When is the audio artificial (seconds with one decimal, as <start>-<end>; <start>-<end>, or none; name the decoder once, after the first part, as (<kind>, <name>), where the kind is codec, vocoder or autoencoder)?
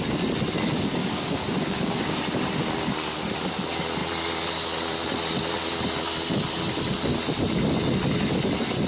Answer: 1.0-2.2 (codec, DAC)